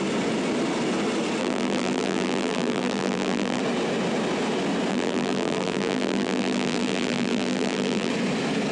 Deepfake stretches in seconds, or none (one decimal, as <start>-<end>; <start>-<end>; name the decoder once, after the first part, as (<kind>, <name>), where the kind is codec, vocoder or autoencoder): 1.4-3.6 (vocoder, BigVGAN v2); 4.9-8.1